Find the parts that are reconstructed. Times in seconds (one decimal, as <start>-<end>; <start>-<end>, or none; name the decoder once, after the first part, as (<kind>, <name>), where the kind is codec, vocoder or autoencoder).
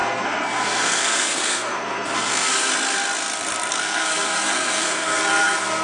0.0-2.7 (codec, SNAC); 3.7-5.8